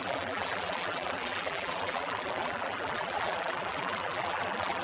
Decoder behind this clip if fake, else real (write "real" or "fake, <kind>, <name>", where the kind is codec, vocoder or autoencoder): fake, vocoder, BigVGAN v2